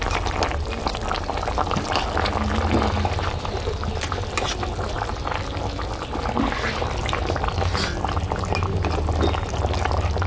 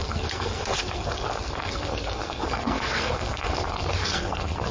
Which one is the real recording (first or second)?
first